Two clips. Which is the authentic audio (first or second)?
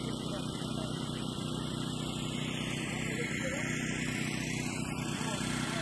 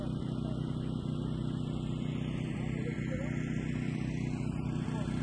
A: second